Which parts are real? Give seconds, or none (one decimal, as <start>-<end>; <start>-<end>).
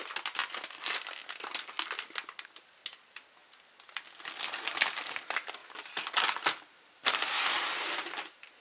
0.0-8.6